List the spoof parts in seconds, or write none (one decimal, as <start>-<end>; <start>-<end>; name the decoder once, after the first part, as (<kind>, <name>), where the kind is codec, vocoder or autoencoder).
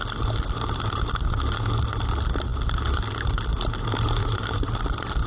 4.2-4.8 (vocoder, BigVGAN v2)